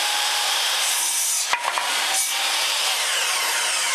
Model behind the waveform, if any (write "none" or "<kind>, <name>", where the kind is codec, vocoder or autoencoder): vocoder, BigVGAN v2